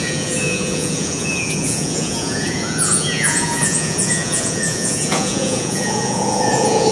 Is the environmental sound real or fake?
fake